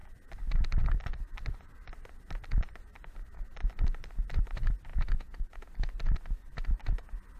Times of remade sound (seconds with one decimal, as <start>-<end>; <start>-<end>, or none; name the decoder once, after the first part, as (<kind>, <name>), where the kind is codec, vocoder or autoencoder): 4.9-5.7 (vocoder, Vocos)